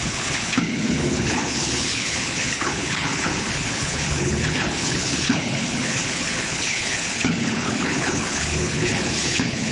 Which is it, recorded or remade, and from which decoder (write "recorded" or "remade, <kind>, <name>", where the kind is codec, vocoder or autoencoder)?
remade, codec, HILCodec